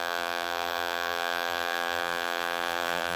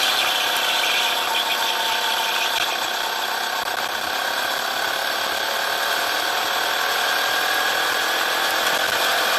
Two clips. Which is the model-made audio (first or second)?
first